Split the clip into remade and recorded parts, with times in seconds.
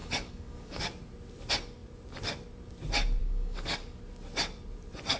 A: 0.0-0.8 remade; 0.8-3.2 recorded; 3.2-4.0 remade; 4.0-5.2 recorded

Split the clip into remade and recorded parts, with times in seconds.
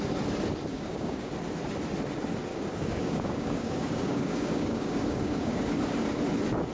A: 0.0-0.7 recorded; 0.7-1.3 remade; 1.3-2.5 recorded; 2.5-5.7 remade; 5.7-6.7 recorded